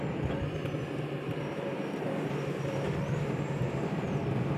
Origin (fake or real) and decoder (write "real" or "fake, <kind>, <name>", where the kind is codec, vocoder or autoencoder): fake, vocoder, BigVGAN v2